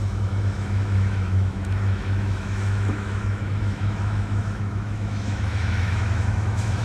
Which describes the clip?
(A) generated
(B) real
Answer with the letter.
A